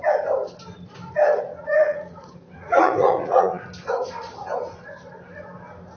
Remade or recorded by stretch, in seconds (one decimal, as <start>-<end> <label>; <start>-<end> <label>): 0.0-1.5 recorded; 1.5-3.7 remade; 3.7-6.0 recorded